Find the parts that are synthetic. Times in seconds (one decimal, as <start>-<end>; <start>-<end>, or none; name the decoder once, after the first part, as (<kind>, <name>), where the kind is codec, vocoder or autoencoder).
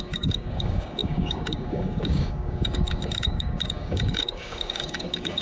0.0-5.4 (codec, DAC)